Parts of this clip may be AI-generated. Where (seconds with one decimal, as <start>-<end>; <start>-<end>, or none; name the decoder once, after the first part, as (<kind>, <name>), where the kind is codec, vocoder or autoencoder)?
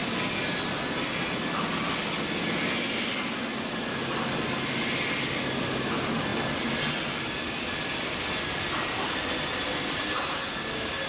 none